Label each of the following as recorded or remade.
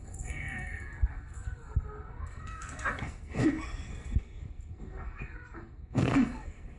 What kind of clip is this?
remade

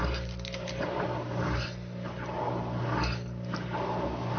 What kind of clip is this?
recorded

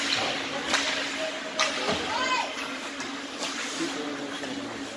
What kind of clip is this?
recorded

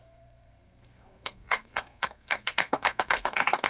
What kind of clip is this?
remade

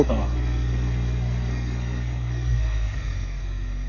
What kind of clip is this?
remade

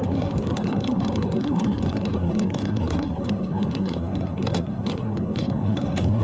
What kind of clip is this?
remade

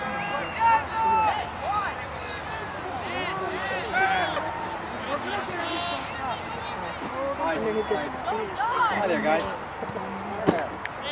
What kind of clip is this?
recorded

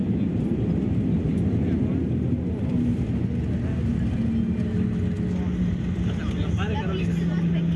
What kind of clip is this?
recorded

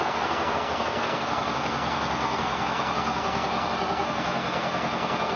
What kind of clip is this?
remade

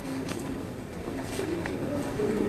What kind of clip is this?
remade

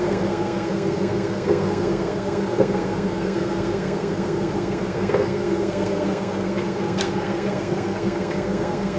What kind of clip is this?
remade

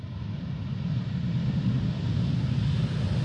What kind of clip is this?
recorded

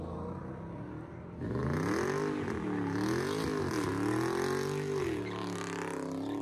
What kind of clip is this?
recorded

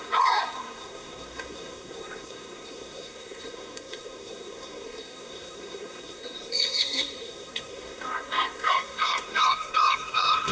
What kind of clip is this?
remade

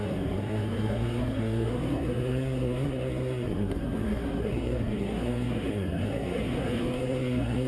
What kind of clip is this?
remade